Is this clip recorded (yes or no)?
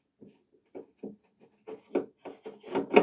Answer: yes